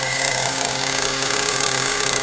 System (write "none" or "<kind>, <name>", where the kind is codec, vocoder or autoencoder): codec, DAC